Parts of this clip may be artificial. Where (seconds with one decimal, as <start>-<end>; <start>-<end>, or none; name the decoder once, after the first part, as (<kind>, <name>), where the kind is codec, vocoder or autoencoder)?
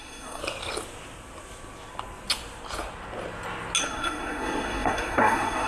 0.0-0.4 (codec, SNAC); 3.8-5.7